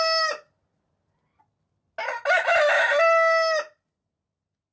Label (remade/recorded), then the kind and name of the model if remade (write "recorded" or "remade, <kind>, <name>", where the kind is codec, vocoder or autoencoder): recorded